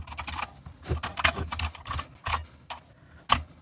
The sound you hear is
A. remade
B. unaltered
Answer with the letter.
B